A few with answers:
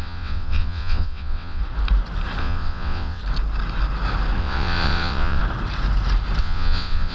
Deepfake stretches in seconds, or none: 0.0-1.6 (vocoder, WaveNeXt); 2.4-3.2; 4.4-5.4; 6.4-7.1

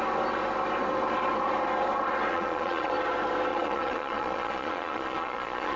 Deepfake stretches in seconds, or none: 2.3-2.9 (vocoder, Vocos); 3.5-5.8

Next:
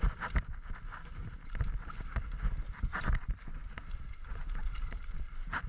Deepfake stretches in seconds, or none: 0.0-1.2 (vocoder, BigVGAN v2); 1.8-5.7

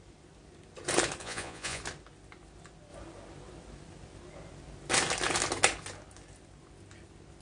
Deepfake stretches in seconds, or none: 1.2-1.8 (vocoder, Vocos)

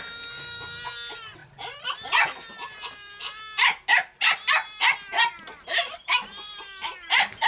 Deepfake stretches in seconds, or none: none